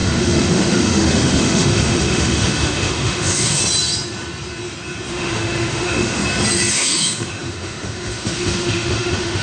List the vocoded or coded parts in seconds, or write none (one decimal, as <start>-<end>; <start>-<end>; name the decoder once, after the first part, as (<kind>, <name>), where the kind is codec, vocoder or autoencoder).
0.0-3.6 (autoencoder, DAC-VAE); 5.1-6.2; 6.7-9.4

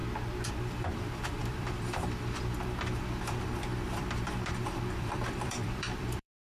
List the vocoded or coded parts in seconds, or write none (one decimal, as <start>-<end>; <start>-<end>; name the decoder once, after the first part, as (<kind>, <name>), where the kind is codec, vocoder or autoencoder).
0.5-6.5 (vocoder, BigVGAN v2)

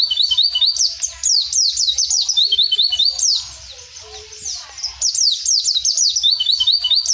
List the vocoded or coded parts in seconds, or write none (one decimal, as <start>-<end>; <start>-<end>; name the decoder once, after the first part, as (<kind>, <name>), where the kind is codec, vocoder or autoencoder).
none

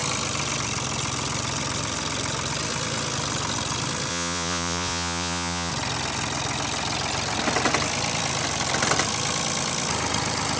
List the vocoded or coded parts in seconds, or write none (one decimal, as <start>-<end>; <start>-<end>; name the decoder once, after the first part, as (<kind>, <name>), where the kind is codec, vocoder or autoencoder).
4.1-5.7 (vocoder, Vocos)

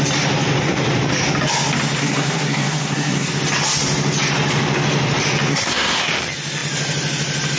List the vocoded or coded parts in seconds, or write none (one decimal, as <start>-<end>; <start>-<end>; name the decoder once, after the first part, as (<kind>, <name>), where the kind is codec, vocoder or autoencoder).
2.0-3.3 (codec, SNAC); 5.5-6.1

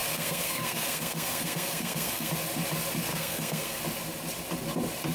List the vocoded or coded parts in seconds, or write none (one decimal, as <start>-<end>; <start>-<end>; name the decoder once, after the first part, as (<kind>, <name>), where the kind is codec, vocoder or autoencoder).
0.0-2.3 (codec, SNAC); 3.1-3.8

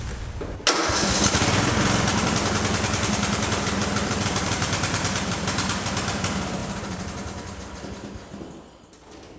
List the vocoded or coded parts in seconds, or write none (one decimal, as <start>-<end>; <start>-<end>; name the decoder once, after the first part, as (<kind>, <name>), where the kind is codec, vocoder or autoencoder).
2.1-5.3 (vocoder, BigVGAN v2); 6.6-7.4